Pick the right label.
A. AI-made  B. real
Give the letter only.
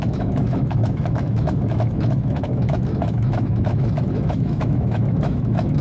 A